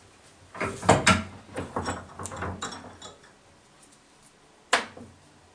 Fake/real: real